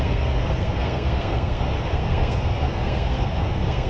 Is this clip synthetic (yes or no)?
yes